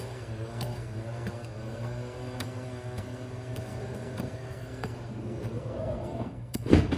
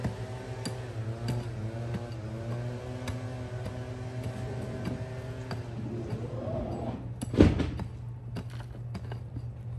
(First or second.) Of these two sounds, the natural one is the second